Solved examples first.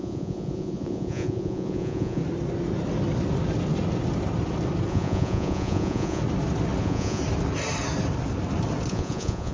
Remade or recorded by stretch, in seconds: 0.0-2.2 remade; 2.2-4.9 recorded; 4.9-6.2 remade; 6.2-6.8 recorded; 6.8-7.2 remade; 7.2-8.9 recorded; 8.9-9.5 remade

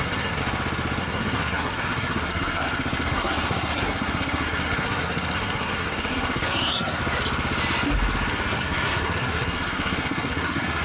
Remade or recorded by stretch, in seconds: 0.0-0.4 remade; 0.4-1.0 recorded; 1.0-7.0 remade; 7.0-8.3 recorded; 8.3-10.8 remade

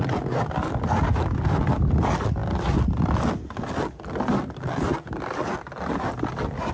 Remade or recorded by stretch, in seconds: 0.0-6.7 recorded

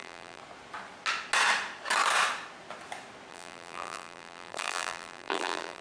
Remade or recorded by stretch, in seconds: 0.0-0.4 remade; 0.4-3.3 recorded; 3.3-5.8 remade

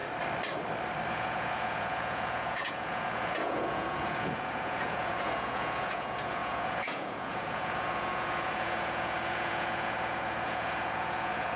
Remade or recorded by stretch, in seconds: 0.0-1.1 recorded; 1.1-11.6 remade